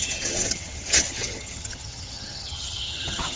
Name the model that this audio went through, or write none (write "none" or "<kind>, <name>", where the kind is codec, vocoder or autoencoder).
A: vocoder, HiFi-GAN